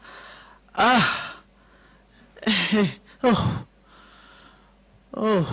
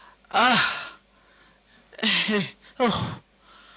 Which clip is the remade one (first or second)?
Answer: second